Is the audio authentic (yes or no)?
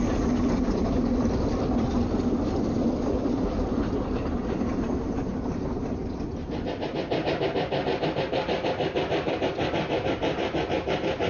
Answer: yes